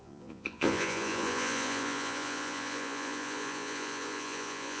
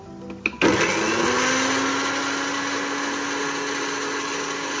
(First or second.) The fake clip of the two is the first